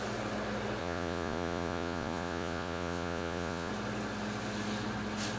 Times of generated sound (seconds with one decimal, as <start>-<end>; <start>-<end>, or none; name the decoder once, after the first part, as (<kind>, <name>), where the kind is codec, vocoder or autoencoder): 0.8-3.7 (vocoder, Vocos)